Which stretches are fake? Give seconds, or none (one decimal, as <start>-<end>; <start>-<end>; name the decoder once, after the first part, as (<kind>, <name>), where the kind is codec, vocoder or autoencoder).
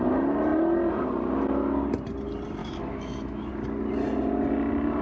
2.6-3.5 (autoencoder, DAC-VAE)